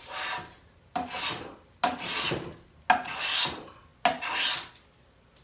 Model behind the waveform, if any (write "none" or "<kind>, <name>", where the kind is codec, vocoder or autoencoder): none